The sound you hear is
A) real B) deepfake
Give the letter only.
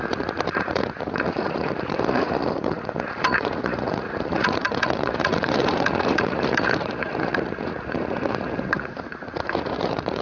B